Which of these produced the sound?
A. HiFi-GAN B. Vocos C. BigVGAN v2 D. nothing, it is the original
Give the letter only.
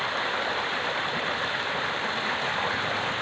D